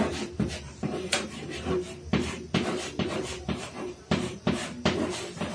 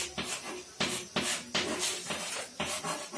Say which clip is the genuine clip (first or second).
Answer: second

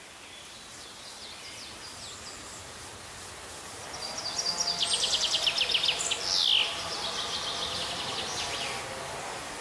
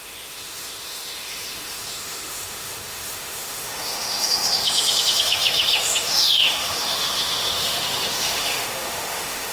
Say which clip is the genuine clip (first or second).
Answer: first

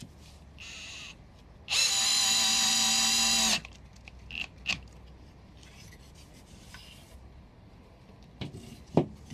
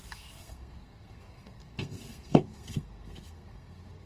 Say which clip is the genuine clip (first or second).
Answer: first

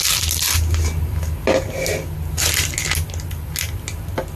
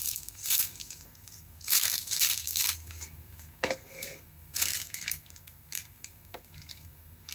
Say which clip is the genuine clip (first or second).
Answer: first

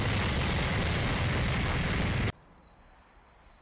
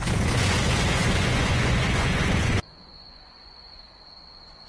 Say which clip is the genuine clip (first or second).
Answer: first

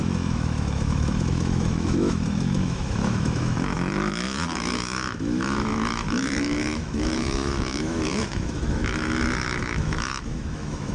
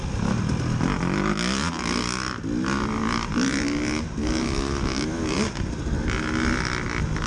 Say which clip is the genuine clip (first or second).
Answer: second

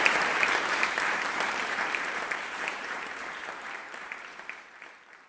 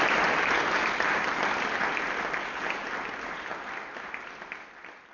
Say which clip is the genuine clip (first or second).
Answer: second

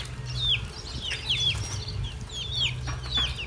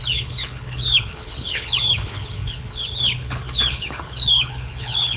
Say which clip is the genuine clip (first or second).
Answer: first